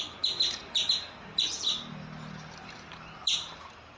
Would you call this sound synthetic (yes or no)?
no